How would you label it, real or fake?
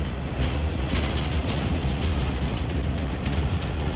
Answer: fake